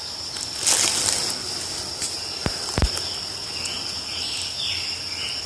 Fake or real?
real